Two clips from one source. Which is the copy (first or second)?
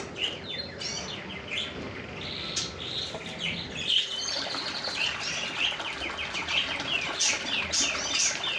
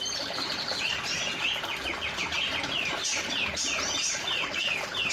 second